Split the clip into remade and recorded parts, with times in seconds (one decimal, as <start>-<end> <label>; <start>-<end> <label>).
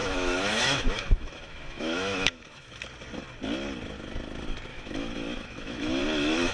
0.0-2.8 remade; 2.8-4.7 recorded; 4.7-6.0 remade; 6.0-6.5 recorded